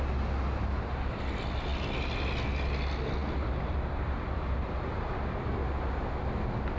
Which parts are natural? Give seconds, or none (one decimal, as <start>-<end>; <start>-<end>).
0.0-6.8